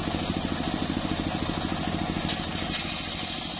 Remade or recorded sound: recorded